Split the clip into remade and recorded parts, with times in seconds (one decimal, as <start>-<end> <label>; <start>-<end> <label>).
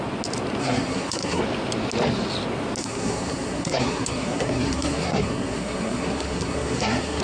0.0-0.6 recorded; 0.6-1.4 remade; 1.4-2.8 recorded; 2.8-7.2 remade